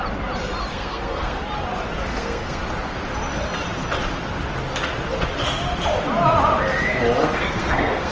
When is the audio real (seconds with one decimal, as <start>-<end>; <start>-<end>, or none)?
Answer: 0.0-0.7; 1.4-2.1; 2.6-7.2